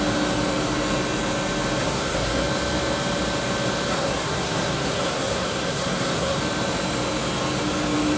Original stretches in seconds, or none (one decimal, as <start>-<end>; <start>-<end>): 0.0-1.8; 2.4-3.9; 6.4-8.2